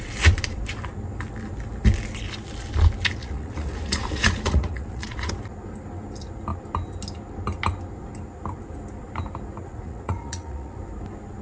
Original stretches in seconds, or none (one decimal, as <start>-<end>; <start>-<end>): 0.0-3.2; 5.3-9.7; 10.8-11.4